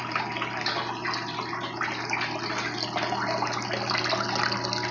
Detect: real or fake real